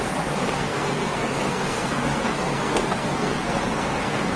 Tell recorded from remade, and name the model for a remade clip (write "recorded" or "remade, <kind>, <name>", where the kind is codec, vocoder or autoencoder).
remade, codec, SNAC